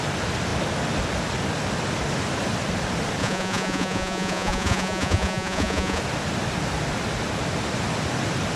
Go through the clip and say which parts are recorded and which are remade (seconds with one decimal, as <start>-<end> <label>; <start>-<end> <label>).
0.0-3.2 recorded; 3.2-6.0 remade; 6.0-8.6 recorded